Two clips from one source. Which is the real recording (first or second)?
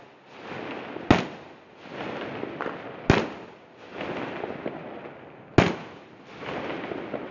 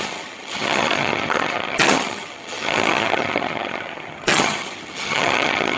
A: first